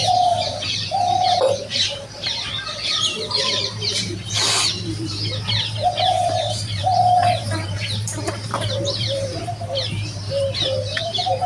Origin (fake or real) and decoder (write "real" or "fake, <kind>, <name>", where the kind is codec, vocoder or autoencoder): fake, vocoder, BigVGAN v2